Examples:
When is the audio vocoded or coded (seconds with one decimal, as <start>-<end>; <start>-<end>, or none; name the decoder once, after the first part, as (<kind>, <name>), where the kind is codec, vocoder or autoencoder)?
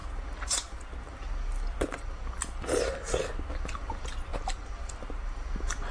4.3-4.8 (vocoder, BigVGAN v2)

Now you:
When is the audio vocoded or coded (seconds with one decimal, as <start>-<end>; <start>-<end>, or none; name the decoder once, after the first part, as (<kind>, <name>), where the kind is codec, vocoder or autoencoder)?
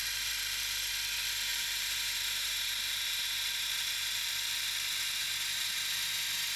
0.0-0.9 (vocoder, BigVGAN v2); 1.5-5.0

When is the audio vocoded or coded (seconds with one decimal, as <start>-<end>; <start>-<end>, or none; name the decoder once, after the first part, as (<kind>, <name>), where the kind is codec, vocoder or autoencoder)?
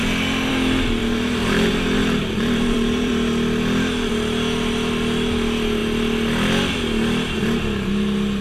1.0-3.1 (vocoder, BigVGAN v2)